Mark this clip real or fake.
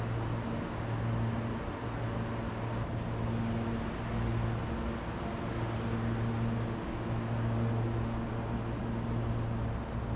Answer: real